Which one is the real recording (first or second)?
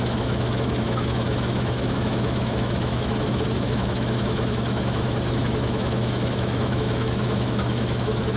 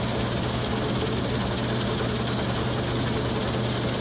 second